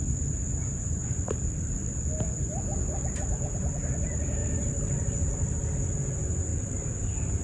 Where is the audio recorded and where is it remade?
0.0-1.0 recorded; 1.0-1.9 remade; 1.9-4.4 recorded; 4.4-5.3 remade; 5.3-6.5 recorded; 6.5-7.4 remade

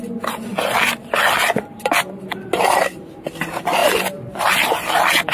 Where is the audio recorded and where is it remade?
0.0-0.5 recorded; 0.5-1.9 remade; 1.9-5.3 recorded

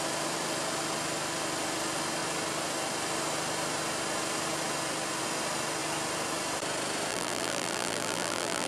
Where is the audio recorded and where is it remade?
0.0-7.1 recorded; 7.1-8.7 remade

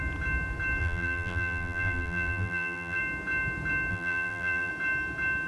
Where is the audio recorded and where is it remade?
0.0-0.8 recorded; 0.8-3.0 remade; 3.0-3.9 recorded; 3.9-4.7 remade; 4.7-5.5 recorded

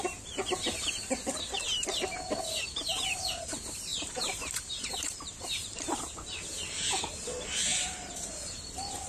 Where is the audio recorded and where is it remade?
0.0-3.9 recorded; 3.9-5.4 remade; 5.4-7.7 recorded; 7.7-8.3 remade; 8.3-9.1 recorded

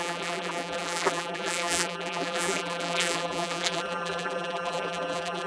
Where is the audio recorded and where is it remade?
0.0-5.5 remade